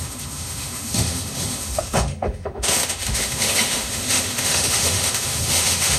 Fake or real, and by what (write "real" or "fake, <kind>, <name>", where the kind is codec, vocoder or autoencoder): fake, autoencoder, DAC-VAE